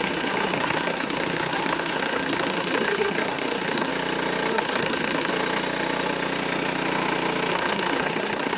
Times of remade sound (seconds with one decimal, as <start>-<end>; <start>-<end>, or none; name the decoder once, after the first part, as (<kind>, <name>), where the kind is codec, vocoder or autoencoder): 0.0-3.9 (codec, SNAC); 4.5-5.3; 7.5-8.6